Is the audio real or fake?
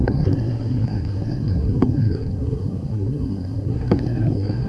fake